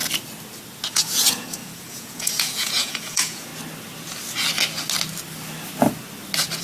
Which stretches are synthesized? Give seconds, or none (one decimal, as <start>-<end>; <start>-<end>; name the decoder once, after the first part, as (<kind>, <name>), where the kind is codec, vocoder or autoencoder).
0.9-3.5 (vocoder, Vocos)